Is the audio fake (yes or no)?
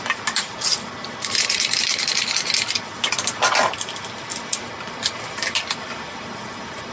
no